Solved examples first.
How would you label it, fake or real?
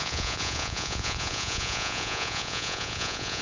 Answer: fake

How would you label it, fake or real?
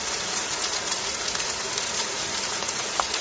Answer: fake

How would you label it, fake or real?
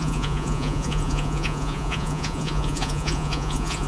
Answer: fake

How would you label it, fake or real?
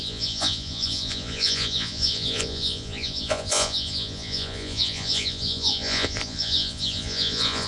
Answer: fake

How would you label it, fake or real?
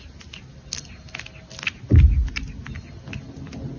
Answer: real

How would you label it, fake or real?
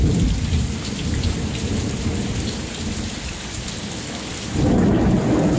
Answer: real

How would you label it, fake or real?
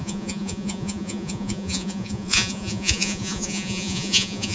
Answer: fake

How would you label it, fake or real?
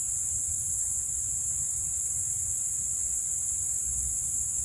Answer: real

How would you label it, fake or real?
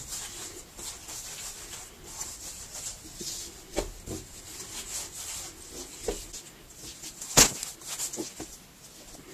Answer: real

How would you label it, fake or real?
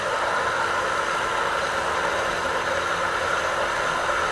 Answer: real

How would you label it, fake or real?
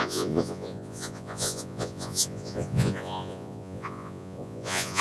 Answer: fake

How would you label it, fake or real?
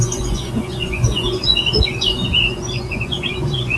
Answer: fake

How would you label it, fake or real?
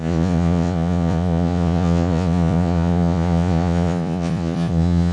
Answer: fake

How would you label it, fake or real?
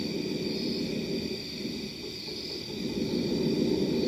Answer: real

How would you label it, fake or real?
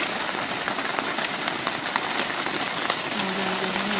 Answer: real